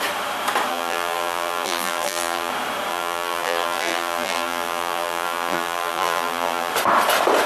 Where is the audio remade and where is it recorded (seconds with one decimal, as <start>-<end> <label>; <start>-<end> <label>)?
0.0-0.7 recorded; 0.7-2.5 remade; 2.5-2.9 recorded; 2.9-6.7 remade; 6.7-7.5 recorded

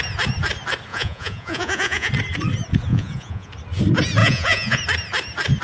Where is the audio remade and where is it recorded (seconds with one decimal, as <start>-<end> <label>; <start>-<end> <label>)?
0.0-0.9 recorded; 0.9-2.1 remade; 2.1-2.9 recorded; 2.9-3.5 remade; 3.5-4.2 recorded; 4.2-4.8 remade; 4.8-5.6 recorded